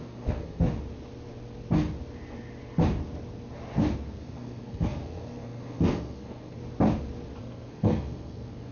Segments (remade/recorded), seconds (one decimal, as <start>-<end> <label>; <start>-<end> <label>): 0.0-0.7 remade; 0.7-3.8 recorded; 3.8-6.6 remade; 6.6-7.4 recorded; 7.4-8.7 remade